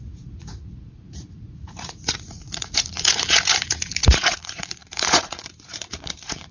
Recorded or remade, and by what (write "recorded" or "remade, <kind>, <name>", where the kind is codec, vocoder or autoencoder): remade, vocoder, Vocos